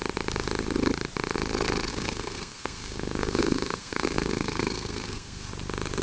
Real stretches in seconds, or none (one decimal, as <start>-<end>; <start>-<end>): 0.0-1.9; 5.5-6.0